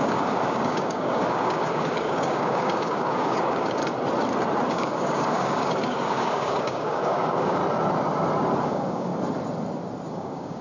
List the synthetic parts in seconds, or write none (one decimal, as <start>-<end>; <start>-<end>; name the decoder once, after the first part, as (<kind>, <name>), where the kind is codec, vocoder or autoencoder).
0.0-3.8 (codec, DAC); 4.7-7.6; 8.7-9.1; 10.1-10.6